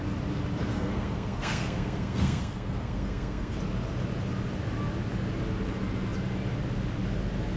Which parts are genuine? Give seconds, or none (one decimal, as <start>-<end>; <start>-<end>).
0.0-0.7; 3.6-7.6